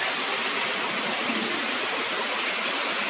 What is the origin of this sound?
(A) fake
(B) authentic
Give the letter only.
B